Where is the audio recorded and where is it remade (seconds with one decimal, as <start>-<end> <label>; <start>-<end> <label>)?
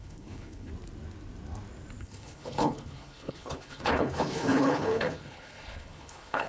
0.0-0.7 remade; 0.7-2.0 recorded; 2.0-6.5 remade